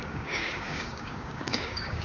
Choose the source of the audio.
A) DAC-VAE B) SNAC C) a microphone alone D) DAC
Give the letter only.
D